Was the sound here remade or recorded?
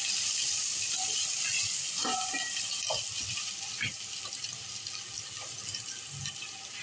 recorded